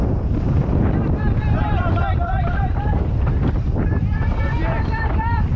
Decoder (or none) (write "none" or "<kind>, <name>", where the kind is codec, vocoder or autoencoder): vocoder, BigVGAN v2